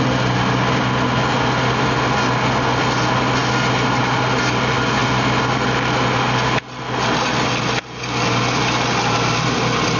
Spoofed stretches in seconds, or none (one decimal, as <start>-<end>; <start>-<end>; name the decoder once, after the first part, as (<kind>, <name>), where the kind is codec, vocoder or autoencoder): none